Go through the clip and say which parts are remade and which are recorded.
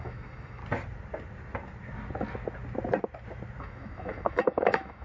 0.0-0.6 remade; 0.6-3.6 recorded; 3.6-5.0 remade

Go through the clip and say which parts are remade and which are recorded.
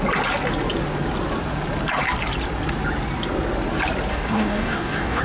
0.0-4.1 recorded; 4.1-5.2 remade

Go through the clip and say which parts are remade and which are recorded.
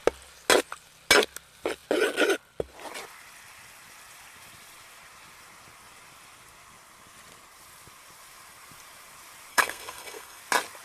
0.0-9.5 recorded; 9.5-10.4 remade; 10.4-10.8 recorded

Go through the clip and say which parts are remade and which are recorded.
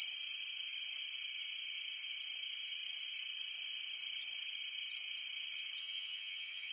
0.0-5.8 recorded; 5.8-6.7 remade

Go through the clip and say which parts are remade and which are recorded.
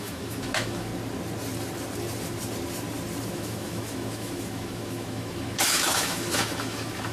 0.0-0.9 remade; 0.9-3.3 recorded; 3.3-7.1 remade